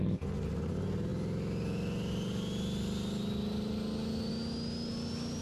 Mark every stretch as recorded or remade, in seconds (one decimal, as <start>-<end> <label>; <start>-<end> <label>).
0.0-5.4 recorded